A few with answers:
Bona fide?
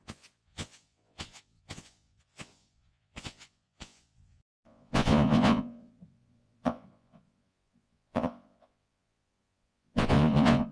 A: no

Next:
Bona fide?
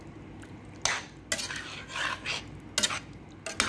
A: yes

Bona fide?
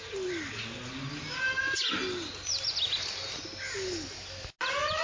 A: yes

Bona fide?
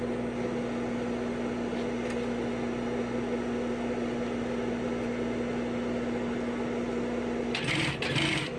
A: yes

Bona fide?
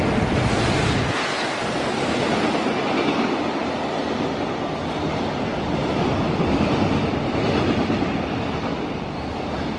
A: yes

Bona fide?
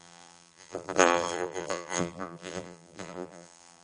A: no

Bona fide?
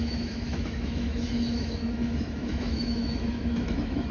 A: no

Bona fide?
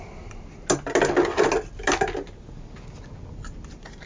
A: yes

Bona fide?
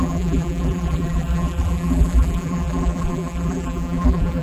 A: no